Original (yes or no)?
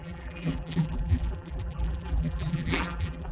no